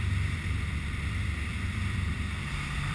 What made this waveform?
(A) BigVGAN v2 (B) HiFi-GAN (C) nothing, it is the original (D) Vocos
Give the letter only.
A